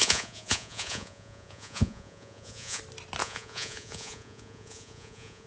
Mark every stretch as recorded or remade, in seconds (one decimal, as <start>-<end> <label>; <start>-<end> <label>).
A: 0.0-2.8 remade; 2.8-3.2 recorded; 3.2-5.5 remade